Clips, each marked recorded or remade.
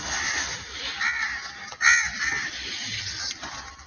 recorded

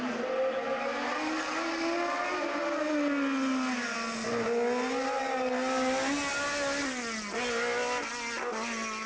recorded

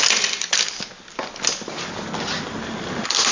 recorded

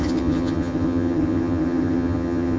remade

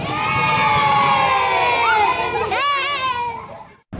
recorded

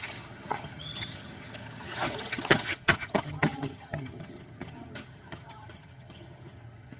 remade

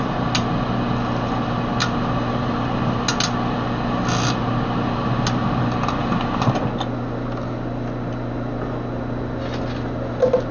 recorded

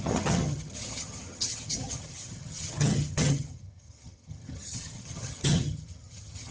remade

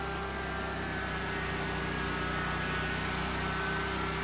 recorded